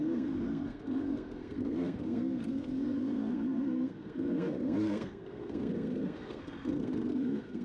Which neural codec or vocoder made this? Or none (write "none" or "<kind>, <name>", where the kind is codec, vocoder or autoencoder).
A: codec, SNAC